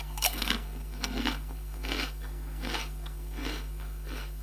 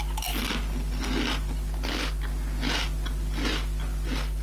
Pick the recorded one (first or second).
second